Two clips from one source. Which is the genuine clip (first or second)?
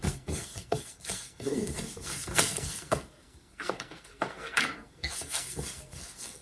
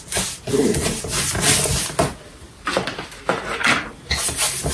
second